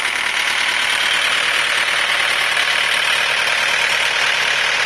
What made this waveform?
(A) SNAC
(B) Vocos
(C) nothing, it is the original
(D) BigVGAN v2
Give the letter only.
C